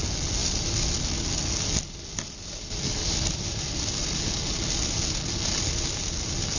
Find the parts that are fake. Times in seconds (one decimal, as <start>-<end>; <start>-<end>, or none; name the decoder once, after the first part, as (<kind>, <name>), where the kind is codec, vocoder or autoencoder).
none